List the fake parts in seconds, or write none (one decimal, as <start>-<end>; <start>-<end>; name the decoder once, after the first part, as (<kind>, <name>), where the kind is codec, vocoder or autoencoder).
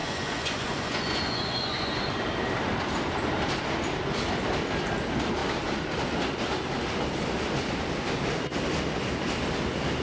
0.0-1.9 (vocoder, Vocos)